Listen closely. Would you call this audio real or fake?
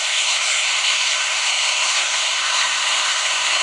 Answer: fake